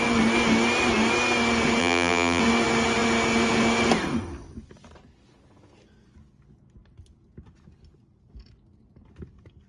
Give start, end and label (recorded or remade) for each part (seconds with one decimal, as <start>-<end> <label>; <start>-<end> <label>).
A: 0.0-1.8 recorded; 1.8-2.4 remade; 2.4-9.7 recorded